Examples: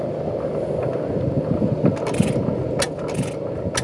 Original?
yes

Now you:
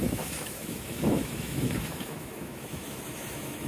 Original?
no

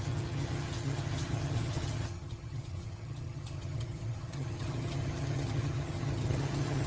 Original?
no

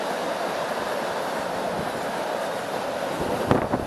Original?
yes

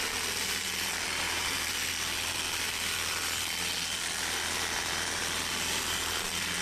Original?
no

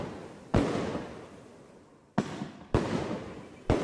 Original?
yes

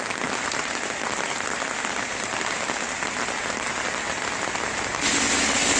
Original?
yes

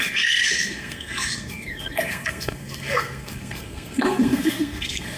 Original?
no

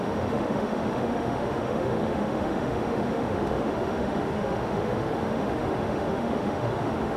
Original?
no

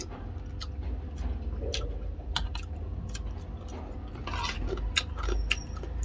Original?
yes